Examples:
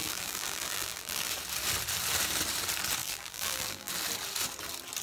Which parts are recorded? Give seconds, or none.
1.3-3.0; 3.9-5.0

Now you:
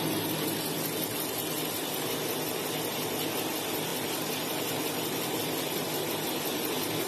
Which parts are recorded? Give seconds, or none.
0.0-3.9; 6.1-7.1

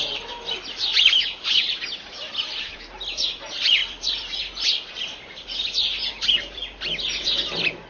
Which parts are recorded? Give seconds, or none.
0.0-7.9

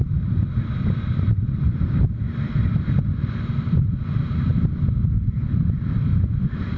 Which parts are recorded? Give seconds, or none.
4.5-5.3

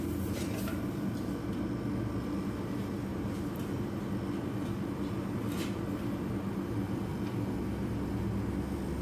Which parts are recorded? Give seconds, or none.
0.0-3.1; 4.1-9.0

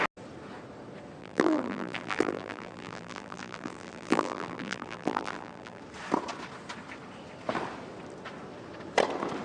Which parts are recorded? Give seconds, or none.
0.0-1.2; 5.8-9.4

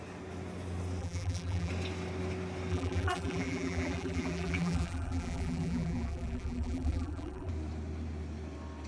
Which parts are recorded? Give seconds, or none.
0.0-1.0; 1.7-2.7; 7.5-8.9